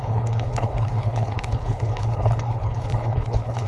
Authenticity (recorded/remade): remade